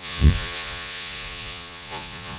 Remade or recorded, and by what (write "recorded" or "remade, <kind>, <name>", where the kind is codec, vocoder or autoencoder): remade, vocoder, Vocos